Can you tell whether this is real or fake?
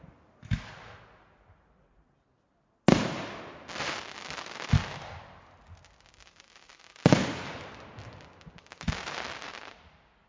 real